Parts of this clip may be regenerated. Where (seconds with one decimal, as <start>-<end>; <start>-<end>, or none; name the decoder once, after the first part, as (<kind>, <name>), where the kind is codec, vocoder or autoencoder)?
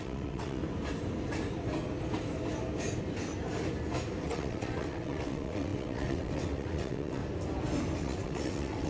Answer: 0.0-0.6 (vocoder, WaveNeXt); 4.2-7.2; 8.0-8.9